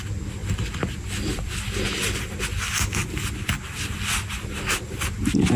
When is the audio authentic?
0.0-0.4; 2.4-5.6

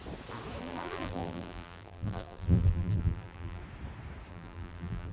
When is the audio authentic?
0.0-0.6; 3.6-4.3

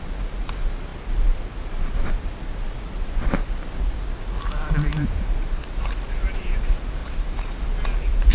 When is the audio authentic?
0.0-4.9; 6.6-7.0; 7.6-8.3

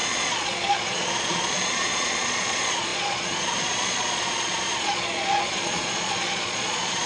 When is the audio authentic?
none

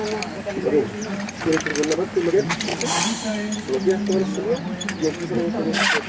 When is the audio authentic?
0.0-2.7; 3.3-6.1

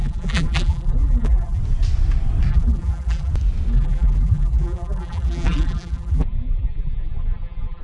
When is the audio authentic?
1.6-2.5; 3.3-3.7